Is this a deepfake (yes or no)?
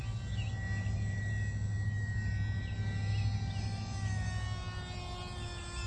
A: no